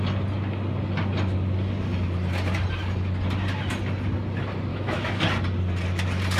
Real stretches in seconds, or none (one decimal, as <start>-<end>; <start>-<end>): 0.0-4.7; 5.2-6.4